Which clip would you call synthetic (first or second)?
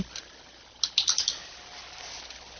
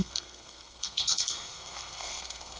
second